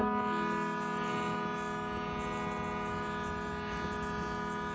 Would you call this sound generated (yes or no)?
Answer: no